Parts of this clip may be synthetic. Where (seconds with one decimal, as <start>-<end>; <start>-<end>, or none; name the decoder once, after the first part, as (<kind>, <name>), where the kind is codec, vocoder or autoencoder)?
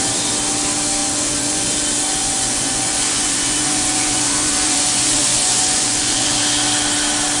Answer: 1.0-1.7 (vocoder, Vocos); 2.2-6.4